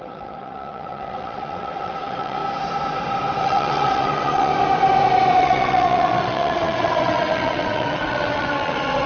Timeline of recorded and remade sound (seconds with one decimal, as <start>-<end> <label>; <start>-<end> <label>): 0.0-2.4 remade; 2.4-3.4 recorded; 3.4-4.5 remade; 4.5-5.4 recorded; 5.4-9.1 remade